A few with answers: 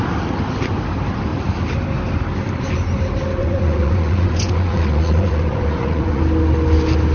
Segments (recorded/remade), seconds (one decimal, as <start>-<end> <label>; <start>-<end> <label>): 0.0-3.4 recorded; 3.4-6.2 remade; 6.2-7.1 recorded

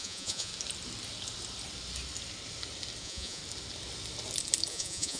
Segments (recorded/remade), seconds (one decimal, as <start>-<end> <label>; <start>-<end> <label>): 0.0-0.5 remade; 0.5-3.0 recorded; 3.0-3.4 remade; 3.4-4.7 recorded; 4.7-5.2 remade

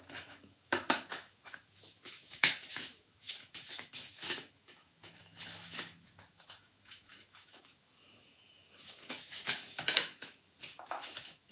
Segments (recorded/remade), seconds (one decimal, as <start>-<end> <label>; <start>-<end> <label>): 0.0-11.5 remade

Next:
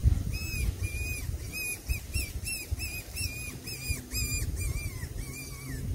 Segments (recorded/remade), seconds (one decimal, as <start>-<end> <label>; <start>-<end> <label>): 0.0-5.9 recorded